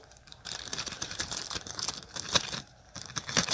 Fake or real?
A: fake